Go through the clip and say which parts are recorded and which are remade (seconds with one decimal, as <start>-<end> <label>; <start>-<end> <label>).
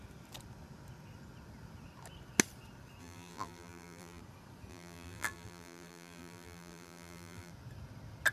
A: 0.0-3.0 recorded; 3.0-4.2 remade; 4.2-4.7 recorded; 4.7-7.5 remade; 7.5-8.3 recorded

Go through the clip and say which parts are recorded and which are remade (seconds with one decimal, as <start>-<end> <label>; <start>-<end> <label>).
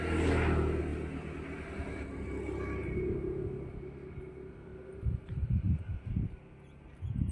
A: 0.0-4.7 recorded; 4.7-6.1 remade; 6.1-7.3 recorded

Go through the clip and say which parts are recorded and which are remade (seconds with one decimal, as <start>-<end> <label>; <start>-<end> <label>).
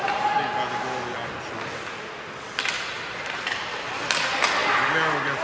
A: 0.0-5.4 recorded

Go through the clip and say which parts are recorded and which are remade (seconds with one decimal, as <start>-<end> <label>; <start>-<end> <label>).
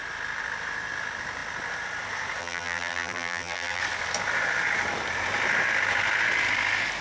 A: 0.0-2.4 recorded; 2.4-3.8 remade; 3.8-7.0 recorded